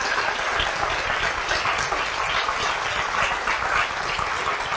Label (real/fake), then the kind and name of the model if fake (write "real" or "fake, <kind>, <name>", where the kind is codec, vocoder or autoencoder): real